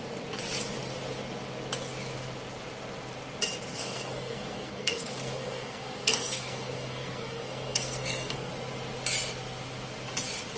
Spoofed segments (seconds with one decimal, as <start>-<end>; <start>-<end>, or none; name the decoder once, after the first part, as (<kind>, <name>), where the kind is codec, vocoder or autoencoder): 3.7-8.5 (codec, SNAC)